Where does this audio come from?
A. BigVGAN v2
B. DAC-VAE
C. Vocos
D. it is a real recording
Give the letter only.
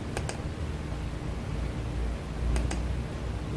D